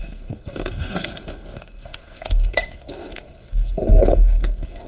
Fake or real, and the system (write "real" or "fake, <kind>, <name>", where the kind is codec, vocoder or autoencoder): fake, codec, SNAC